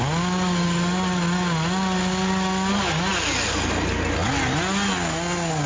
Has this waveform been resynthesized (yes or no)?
no